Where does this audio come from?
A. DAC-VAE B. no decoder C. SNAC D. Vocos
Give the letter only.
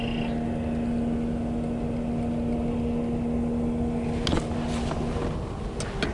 B